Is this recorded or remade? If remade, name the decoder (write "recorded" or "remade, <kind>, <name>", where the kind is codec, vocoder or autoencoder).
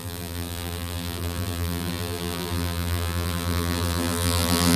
remade, vocoder, BigVGAN v2